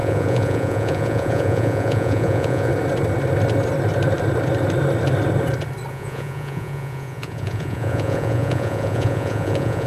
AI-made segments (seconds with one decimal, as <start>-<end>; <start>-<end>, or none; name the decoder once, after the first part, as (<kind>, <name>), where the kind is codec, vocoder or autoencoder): 0.0-2.7 (vocoder, Vocos); 5.9-9.9